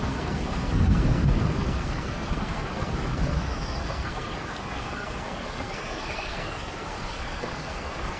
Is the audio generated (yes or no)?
yes